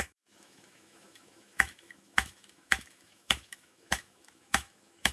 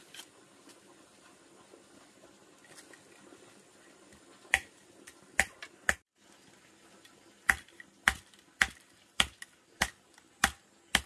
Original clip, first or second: second